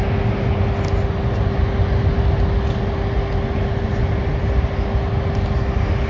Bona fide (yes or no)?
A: yes